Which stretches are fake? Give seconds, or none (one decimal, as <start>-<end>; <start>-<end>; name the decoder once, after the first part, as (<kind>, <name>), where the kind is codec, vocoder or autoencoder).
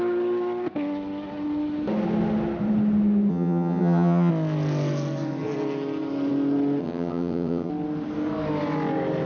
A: 3.3-4.3 (vocoder, HiFi-GAN); 6.8-7.7